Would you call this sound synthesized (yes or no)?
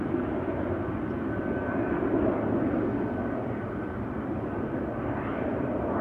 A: no